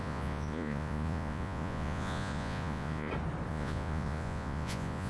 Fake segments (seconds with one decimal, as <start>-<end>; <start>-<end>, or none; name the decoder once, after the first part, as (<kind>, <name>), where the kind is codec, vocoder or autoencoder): 0.0-3.1 (vocoder, Vocos); 3.5-5.1